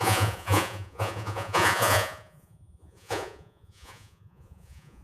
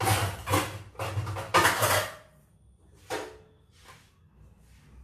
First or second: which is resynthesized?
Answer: first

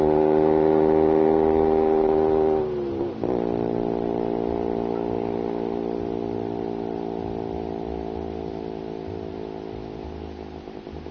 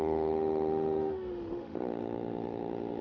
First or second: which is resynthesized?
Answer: second